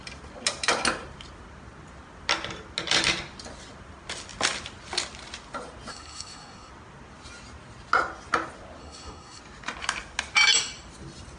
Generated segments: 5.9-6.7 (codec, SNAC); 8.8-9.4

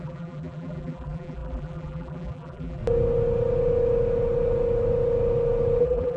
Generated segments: 0.0-2.8 (vocoder, BigVGAN v2); 5.8-6.2

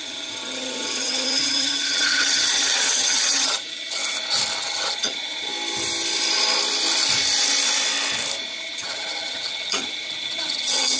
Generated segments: 0.0-4.0 (vocoder, HiFi-GAN); 4.6-5.5; 8.6-11.0

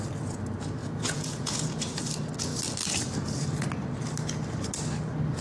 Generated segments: 0.8-2.0 (vocoder, Vocos)

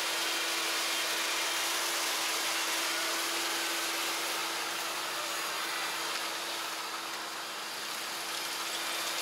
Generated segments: none

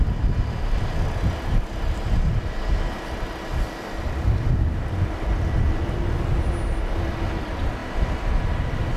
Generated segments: none

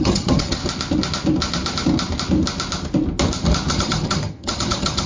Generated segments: 0.0-0.6 (vocoder, HiFi-GAN); 3.7-5.1

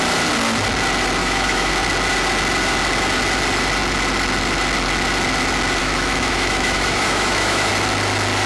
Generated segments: 1.2-1.7 (autoencoder, DAC-VAE); 5.8-7.7